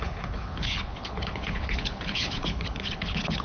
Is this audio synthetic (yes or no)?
yes